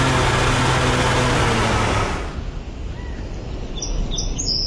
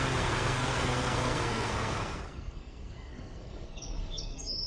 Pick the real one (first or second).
first